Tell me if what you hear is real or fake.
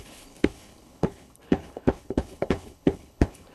fake